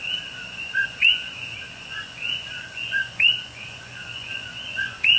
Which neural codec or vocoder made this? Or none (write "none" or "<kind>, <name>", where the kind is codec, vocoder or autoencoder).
vocoder, Vocos